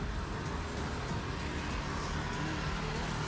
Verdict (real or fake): real